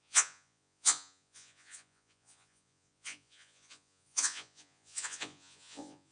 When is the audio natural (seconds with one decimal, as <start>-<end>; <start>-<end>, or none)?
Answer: none